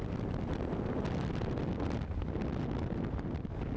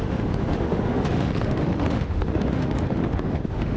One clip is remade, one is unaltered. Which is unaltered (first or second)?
first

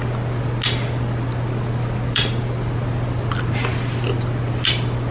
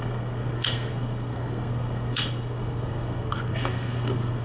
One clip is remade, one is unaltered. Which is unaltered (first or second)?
first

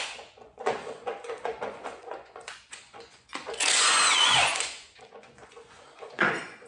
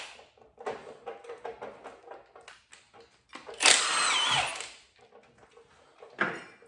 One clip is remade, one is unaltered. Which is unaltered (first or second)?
second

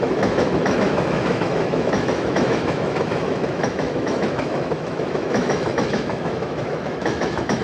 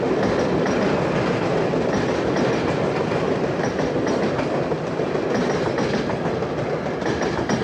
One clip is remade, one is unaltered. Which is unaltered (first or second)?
second